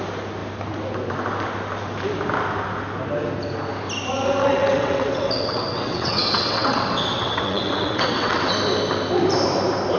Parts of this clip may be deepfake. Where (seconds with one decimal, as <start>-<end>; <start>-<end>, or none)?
4.4-8.5